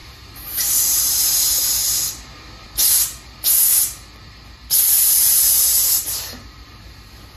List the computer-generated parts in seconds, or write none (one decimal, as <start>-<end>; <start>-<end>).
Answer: 0.0-1.8; 5.1-7.4